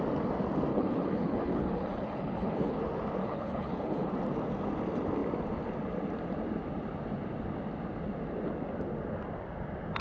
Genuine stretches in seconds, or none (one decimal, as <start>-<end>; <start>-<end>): 0.0-0.7; 2.8-3.2; 4.1-10.0